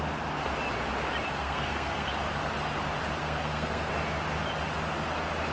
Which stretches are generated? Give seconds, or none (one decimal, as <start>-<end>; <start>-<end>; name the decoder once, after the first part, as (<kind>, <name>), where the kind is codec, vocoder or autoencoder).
1.4-2.1 (codec, SNAC); 3.2-3.9